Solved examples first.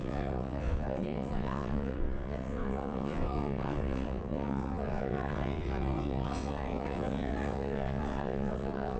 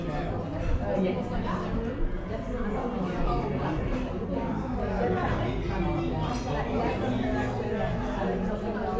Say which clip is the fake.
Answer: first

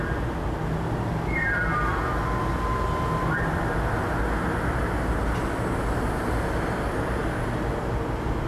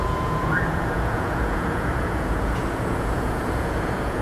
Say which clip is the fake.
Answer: second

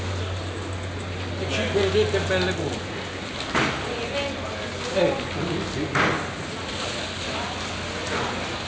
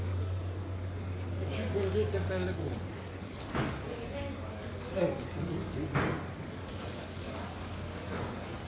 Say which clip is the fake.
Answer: second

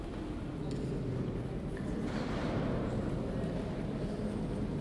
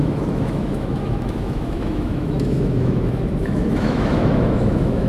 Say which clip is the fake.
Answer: second